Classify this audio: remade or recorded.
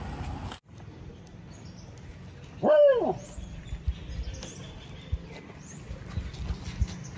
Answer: recorded